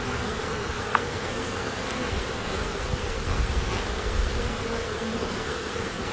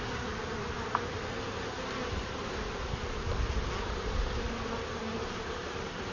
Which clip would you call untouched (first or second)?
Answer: second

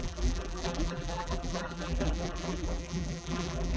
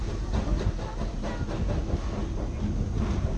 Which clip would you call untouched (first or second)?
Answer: second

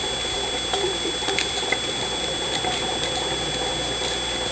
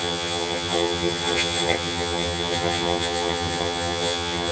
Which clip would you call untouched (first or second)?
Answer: first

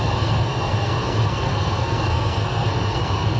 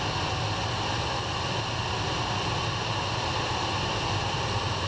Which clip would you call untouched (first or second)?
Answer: second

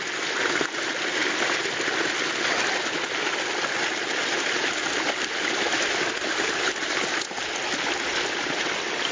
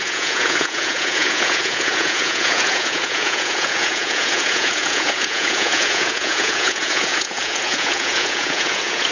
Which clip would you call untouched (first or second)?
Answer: first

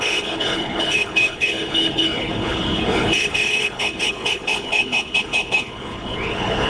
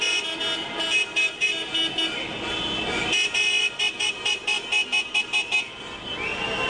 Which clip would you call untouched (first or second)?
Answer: second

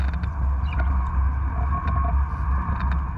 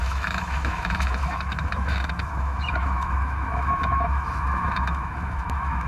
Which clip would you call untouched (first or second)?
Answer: first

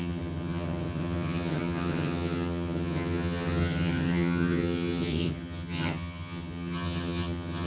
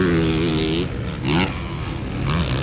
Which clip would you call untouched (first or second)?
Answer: second